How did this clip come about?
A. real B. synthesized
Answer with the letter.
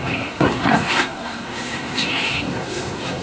B